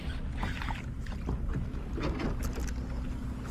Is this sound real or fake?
real